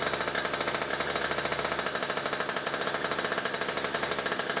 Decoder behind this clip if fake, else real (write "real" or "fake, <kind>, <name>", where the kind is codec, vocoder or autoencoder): real